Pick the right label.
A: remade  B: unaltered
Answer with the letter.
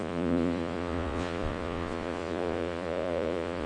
A